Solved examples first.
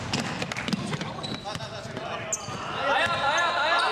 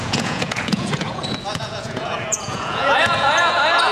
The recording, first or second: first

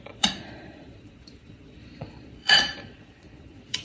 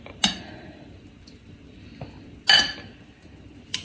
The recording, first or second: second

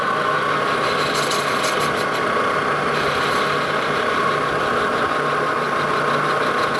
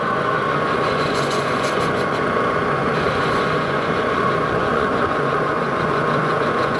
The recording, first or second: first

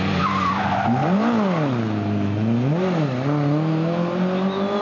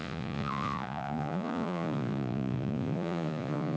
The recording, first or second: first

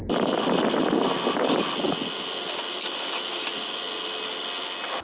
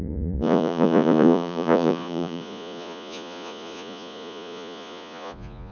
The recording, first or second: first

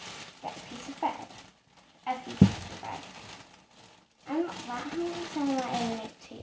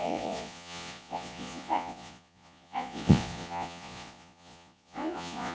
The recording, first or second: first